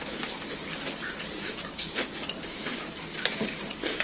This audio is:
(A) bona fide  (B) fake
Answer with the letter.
B